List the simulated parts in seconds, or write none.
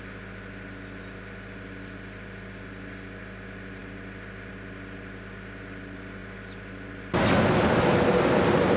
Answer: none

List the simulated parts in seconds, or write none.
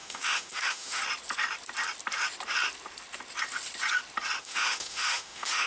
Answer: 0.0-1.0 (autoencoder, DAC-VAE); 4.4-5.7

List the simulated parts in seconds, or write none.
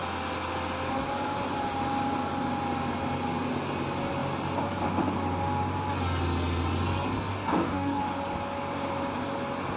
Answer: 7.3-8.0 (codec, DAC)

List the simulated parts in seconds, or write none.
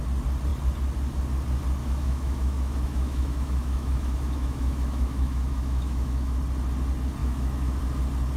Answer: 1.8-6.4 (autoencoder, DAC-VAE); 7.2-7.8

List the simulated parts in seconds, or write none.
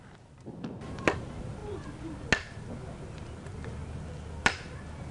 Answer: none